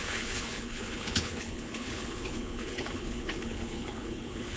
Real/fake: fake